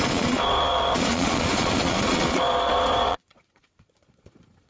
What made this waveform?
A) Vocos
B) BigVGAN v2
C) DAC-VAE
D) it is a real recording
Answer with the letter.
A